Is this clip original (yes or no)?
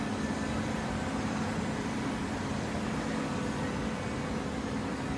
yes